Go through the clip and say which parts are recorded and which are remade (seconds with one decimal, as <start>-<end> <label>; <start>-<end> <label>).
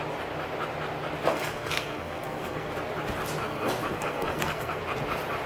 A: 0.0-1.3 recorded; 1.3-2.7 remade; 2.7-3.4 recorded; 3.4-4.8 remade; 4.8-5.5 recorded